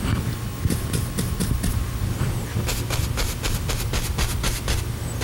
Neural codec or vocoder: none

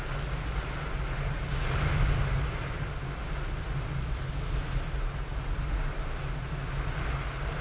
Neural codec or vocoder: none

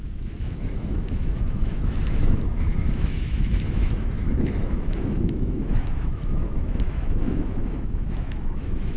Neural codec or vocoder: autoencoder, DAC-VAE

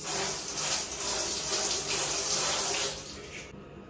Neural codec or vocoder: none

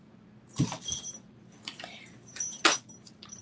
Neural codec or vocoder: none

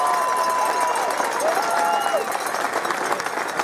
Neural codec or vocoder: none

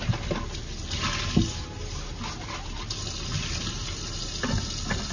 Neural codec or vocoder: none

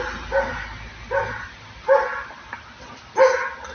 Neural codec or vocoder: none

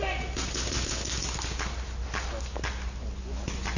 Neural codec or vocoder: none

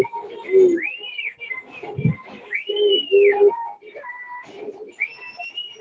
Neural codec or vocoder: none